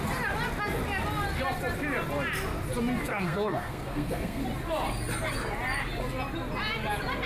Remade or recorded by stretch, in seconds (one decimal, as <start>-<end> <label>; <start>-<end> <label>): 0.0-3.1 recorded; 3.1-4.4 remade; 4.4-7.3 recorded